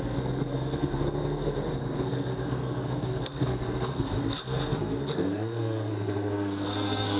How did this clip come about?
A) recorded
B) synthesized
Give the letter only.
B